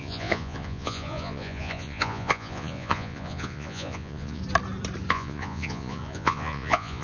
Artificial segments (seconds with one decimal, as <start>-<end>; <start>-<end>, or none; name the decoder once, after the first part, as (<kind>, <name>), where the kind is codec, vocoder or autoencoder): 0.0-4.4 (vocoder, Vocos); 5.1-7.0